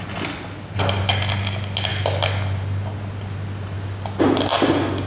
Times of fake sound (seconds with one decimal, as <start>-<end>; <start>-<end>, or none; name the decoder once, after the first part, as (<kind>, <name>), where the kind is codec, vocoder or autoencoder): none